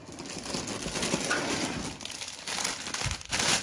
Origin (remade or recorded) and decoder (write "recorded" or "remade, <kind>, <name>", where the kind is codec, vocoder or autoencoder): recorded